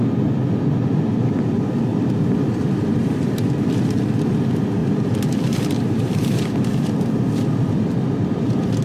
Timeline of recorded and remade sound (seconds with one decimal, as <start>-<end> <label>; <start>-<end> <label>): 0.0-1.9 recorded; 1.9-3.3 remade; 3.3-4.8 recorded; 4.8-8.8 remade